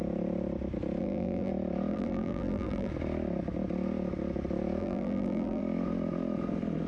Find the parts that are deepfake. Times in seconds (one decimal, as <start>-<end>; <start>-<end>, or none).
1.0-1.5; 1.9-2.9; 4.8-5.6